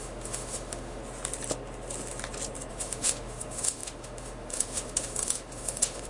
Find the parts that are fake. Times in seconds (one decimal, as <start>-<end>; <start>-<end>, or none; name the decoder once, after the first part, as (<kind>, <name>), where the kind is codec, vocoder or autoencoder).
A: 0.0-1.0 (autoencoder, DAC-VAE); 2.7-6.1